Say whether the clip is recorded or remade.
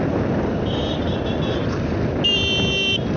recorded